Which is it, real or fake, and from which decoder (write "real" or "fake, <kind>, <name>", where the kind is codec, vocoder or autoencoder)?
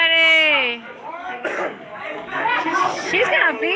fake, codec, DAC